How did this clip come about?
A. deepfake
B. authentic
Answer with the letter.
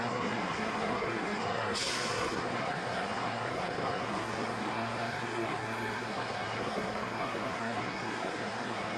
A